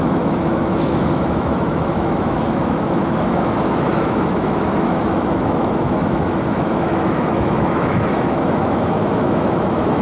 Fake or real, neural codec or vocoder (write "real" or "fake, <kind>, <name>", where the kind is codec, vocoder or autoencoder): fake, autoencoder, DAC-VAE